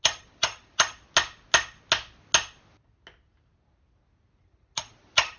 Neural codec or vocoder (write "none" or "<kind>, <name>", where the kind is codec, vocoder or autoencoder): none